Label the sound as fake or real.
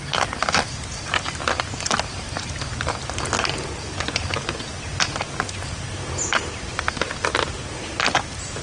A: real